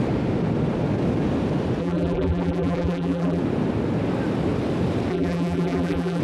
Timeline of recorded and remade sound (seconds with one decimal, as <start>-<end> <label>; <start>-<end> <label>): 0.0-1.8 recorded; 1.8-3.4 remade; 3.4-5.1 recorded; 5.1-6.2 remade